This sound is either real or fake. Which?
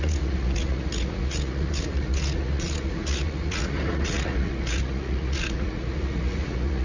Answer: fake